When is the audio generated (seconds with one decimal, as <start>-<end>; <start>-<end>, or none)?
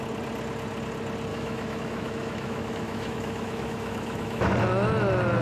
1.3-4.5